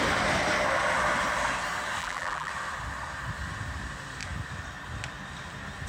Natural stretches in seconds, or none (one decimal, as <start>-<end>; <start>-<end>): 0.0-2.0; 2.5-5.9